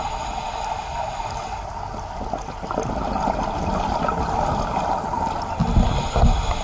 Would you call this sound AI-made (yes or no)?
no